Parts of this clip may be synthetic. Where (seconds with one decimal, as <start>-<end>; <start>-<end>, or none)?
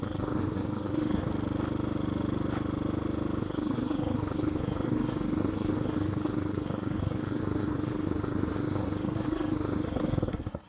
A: 0.0-1.3; 3.4-10.7